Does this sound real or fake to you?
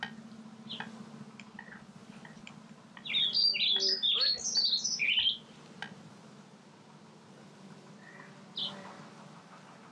real